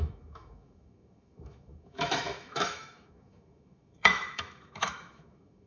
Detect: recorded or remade remade